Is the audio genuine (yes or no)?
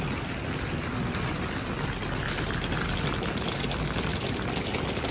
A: yes